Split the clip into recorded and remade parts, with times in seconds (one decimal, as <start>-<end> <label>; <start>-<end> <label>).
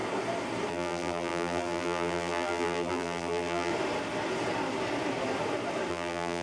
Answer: 0.0-0.7 recorded; 0.7-3.7 remade; 3.7-5.9 recorded; 5.9-6.4 remade